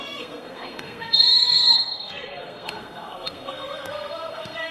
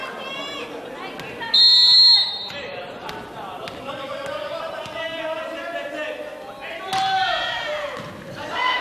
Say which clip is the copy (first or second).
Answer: first